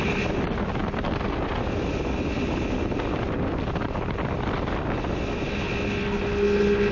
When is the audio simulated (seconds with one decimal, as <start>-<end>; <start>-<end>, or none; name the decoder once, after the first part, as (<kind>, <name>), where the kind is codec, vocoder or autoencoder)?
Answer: none

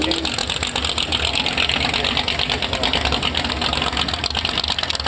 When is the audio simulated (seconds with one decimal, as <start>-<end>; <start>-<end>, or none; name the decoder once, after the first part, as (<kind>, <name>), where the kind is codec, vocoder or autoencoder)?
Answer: none

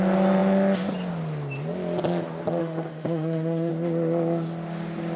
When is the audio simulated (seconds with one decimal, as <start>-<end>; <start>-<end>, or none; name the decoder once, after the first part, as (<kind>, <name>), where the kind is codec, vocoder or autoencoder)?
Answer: 2.6-3.7 (autoencoder, DAC-VAE)

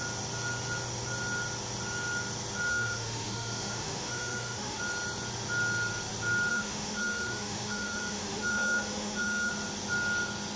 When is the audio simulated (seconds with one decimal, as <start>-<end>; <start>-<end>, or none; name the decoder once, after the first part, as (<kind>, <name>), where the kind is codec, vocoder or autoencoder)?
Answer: 2.7-4.8 (autoencoder, DAC-VAE); 6.5-9.5

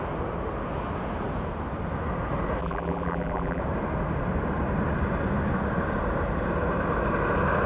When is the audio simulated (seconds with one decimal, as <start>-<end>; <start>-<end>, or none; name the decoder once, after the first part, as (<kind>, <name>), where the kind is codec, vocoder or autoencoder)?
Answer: 2.6-3.6 (vocoder, BigVGAN v2)

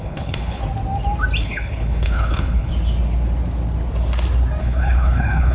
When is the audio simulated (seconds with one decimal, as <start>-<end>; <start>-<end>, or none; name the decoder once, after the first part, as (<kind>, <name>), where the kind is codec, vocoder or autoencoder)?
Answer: 0.0-0.6 (codec, HILCodec); 1.4-2.7; 4.6-5.5

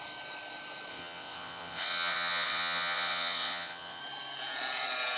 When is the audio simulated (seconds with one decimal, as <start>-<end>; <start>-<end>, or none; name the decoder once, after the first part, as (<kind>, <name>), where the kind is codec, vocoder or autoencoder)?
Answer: 0.9-4.0 (vocoder, WaveNeXt)